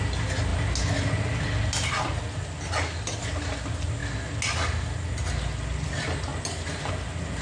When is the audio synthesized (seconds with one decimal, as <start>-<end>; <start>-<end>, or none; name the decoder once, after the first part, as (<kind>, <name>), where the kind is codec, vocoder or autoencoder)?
none